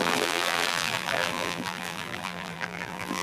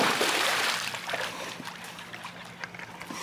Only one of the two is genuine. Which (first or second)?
second